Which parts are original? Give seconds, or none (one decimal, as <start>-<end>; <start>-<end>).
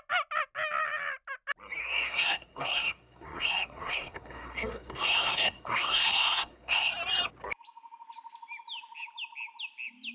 0.0-1.8; 6.9-10.1